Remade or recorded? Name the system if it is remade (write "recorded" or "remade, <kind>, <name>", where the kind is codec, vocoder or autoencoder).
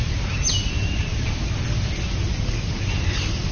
recorded